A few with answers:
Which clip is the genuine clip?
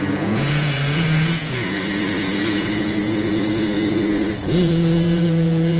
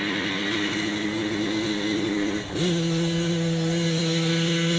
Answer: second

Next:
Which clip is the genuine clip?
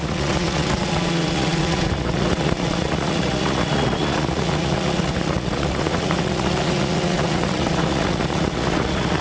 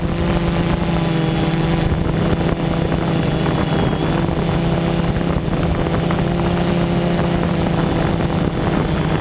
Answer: second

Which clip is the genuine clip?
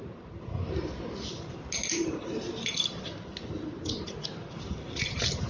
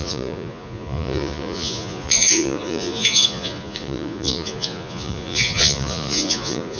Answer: first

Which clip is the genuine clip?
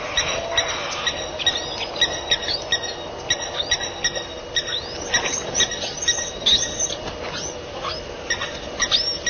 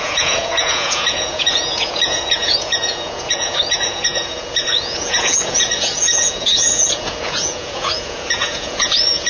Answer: first